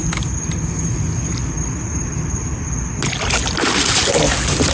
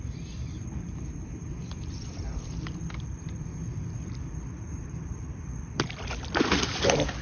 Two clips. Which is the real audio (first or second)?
first